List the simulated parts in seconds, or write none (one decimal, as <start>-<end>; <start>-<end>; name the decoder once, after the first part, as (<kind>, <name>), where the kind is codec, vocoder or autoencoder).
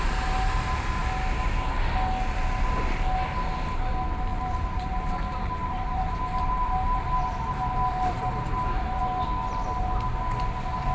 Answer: 4.3-9.0 (vocoder, BigVGAN v2)